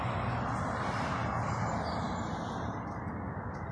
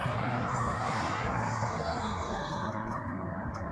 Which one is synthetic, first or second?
second